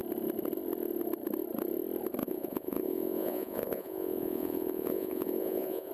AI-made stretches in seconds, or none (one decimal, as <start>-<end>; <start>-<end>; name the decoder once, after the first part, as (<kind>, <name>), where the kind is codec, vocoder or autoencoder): 2.2-5.9 (vocoder, Vocos)